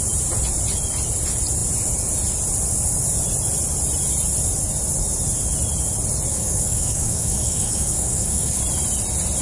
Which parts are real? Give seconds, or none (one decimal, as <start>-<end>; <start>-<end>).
0.0-6.3; 8.6-9.4